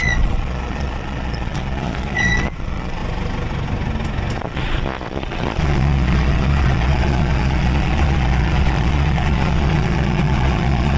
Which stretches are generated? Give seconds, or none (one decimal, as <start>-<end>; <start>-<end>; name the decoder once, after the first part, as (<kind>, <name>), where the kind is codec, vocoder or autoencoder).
0.0-3.0 (vocoder, Vocos); 4.4-11.0